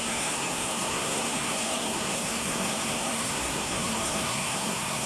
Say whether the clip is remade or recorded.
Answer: remade